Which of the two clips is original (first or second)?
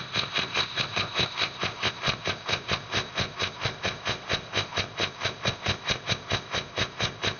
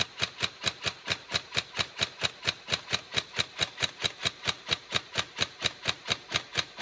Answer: second